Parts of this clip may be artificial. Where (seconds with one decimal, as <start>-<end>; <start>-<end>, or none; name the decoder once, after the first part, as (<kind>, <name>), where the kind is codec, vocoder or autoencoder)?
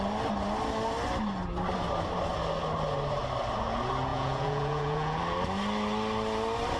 4.1-5.2 (vocoder, Vocos)